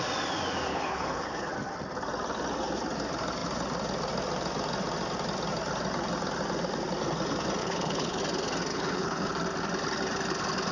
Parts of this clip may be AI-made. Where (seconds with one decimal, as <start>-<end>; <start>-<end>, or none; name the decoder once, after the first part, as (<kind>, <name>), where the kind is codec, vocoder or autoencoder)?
0.7-1.5 (codec, HILCodec); 7.6-8.2; 8.7-9.3